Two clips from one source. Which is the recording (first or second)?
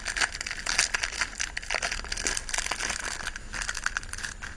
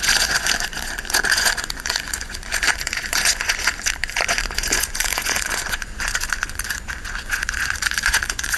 first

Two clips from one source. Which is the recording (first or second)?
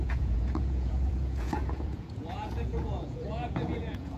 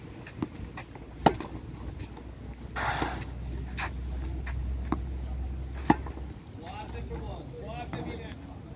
second